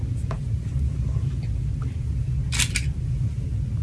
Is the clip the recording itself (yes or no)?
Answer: yes